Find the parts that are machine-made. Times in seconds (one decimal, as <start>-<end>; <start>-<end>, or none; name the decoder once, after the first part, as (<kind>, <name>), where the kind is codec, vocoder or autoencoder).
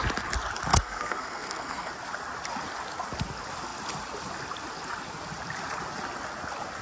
0.7-1.9 (codec, SNAC)